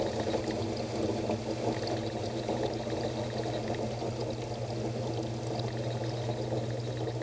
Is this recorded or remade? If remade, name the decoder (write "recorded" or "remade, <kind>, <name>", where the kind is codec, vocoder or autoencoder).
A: recorded